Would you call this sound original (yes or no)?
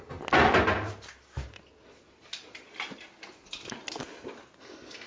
yes